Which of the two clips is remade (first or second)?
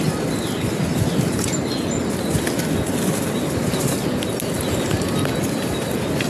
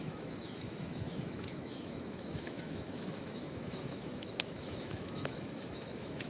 second